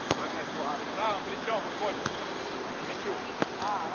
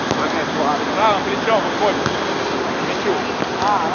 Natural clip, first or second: second